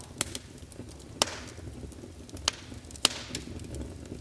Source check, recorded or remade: recorded